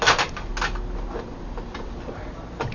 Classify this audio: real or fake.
real